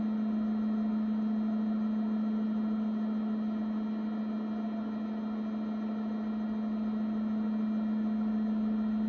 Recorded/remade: recorded